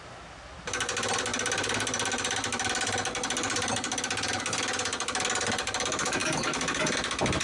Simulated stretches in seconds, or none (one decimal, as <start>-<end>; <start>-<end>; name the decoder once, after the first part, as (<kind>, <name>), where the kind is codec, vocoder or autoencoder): 6.2-6.8 (codec, DAC)